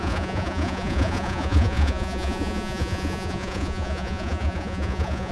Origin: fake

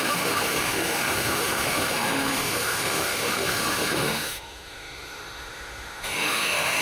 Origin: fake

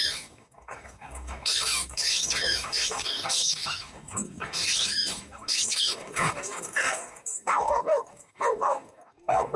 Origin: fake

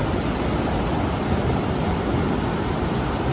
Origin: real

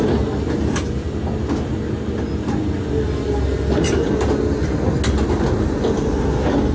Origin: real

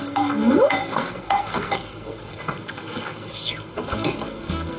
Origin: fake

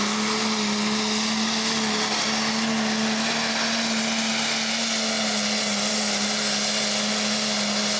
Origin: real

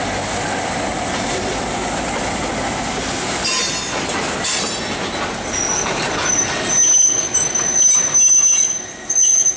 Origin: real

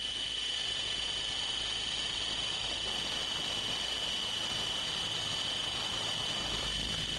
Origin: real